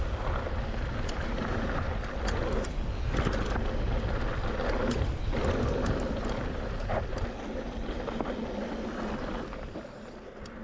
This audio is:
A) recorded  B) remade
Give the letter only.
A